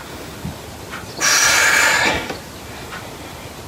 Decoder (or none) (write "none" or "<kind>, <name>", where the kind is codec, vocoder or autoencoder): none